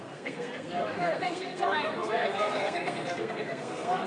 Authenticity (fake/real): fake